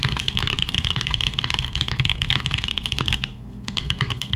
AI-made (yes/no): yes